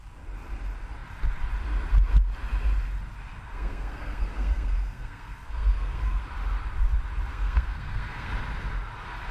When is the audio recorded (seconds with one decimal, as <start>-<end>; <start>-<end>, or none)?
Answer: 0.0-3.5; 6.2-7.3; 8.3-9.3